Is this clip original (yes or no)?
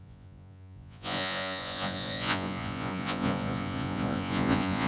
no